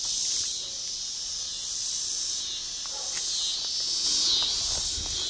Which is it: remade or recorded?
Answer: recorded